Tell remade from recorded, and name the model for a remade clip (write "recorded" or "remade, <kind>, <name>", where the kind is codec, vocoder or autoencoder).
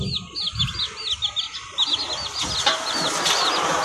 recorded